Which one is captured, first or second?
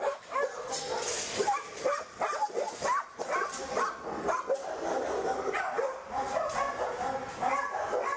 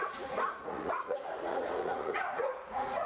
first